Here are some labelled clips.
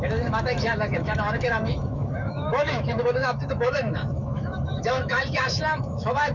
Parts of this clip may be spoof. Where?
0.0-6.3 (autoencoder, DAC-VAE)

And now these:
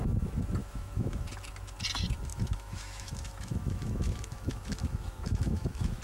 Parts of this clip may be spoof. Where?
0.6-1.3 (autoencoder, DAC-VAE); 2.3-6.0

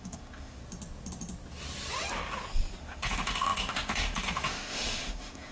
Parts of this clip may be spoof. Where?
0.0-0.6 (autoencoder, DAC-VAE); 2.8-5.5

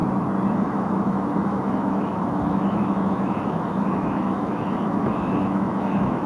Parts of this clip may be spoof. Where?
0.5-6.3 (autoencoder, DAC-VAE)

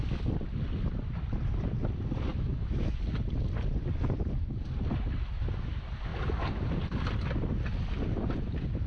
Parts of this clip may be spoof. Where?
2.3-3.0 (autoencoder, DAC-VAE)